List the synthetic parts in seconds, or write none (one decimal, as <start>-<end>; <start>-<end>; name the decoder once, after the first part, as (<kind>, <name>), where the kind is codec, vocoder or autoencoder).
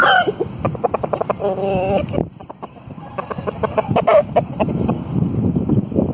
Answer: 2.2-5.2 (vocoder, BigVGAN v2)